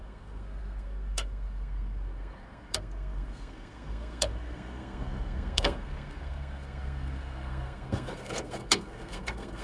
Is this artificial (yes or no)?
yes